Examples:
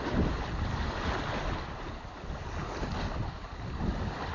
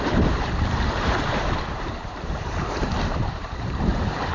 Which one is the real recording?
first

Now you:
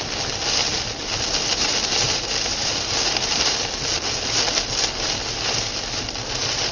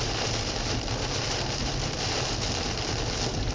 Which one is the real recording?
first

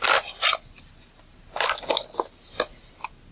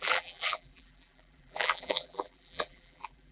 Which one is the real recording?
first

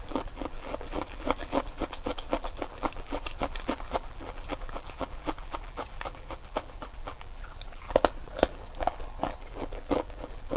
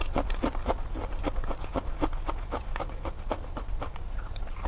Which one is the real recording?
second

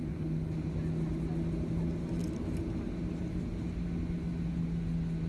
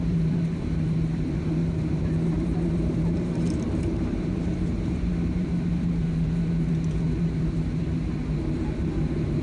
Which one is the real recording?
first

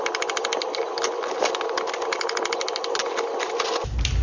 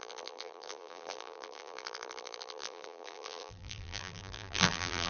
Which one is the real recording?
first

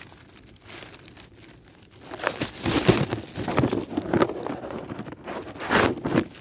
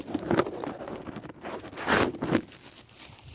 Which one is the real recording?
first